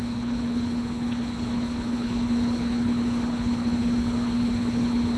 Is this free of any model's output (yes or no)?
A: no